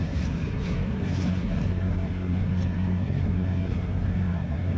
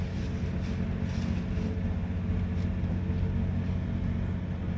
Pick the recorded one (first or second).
second